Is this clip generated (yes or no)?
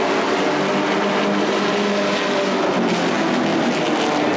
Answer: no